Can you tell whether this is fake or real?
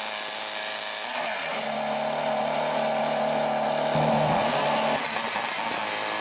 real